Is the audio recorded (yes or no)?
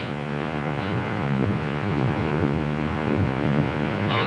no